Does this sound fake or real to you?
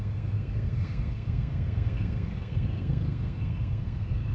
fake